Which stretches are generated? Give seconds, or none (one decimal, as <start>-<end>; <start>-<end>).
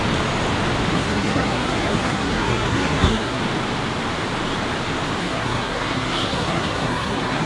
0.9-3.4; 5.2-7.5